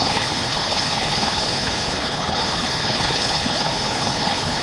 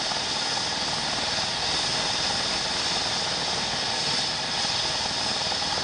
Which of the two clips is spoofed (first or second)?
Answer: first